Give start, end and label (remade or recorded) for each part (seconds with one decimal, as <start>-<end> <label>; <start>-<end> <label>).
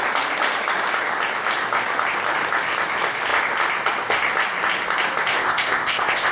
0.0-5.3 recorded; 5.3-6.3 remade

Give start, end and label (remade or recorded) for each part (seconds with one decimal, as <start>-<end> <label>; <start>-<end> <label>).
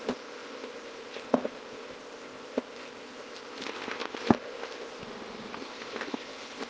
0.0-5.0 remade; 5.0-5.6 recorded; 5.6-6.7 remade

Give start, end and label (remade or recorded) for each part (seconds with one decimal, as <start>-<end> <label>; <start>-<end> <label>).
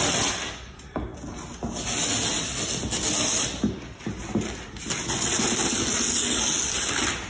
0.0-7.3 recorded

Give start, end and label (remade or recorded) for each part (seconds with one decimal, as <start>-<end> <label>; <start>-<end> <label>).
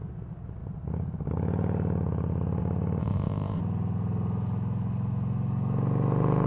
0.0-3.0 recorded; 3.0-3.6 remade; 3.6-6.5 recorded